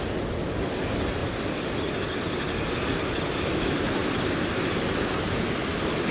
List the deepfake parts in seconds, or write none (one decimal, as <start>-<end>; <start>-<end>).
none